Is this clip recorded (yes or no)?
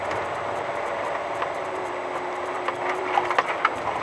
no